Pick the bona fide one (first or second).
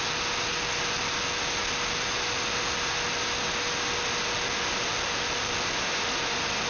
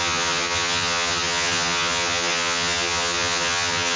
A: first